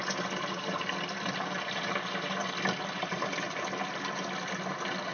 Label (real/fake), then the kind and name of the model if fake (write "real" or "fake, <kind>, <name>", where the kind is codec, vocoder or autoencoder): real